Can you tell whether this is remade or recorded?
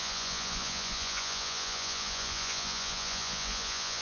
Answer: remade